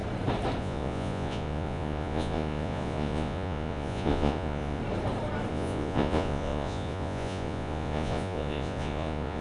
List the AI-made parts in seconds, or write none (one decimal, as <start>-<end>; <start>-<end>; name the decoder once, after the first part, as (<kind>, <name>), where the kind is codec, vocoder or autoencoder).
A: 0.6-4.8 (vocoder, Vocos); 5.5-9.4